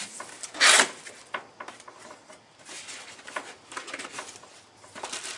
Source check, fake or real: real